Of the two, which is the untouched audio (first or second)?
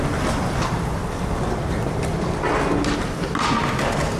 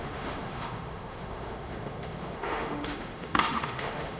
first